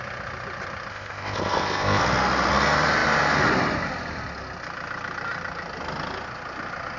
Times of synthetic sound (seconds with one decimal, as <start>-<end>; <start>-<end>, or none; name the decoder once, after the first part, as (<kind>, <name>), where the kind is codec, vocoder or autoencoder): 0.9-2.0 (codec, ZipCodec)